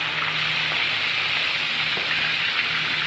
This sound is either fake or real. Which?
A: real